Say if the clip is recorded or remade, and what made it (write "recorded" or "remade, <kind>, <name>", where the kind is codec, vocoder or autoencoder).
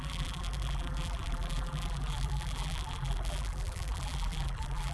remade, vocoder, BigVGAN v2